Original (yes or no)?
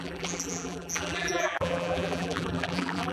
no